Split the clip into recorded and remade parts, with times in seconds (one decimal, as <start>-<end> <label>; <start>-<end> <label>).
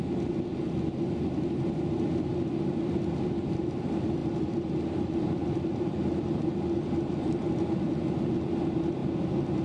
0.0-9.6 recorded